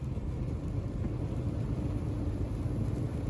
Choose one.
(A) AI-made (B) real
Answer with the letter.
B